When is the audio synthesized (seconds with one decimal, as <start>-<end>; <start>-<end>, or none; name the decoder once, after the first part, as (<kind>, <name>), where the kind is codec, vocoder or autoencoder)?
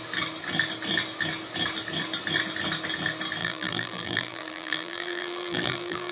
3.4-6.1 (vocoder, BigVGAN v2)